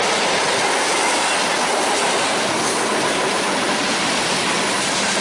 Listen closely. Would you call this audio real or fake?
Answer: real